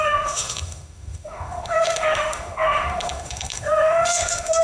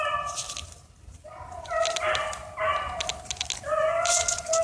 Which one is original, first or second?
second